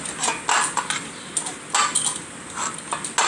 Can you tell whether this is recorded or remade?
recorded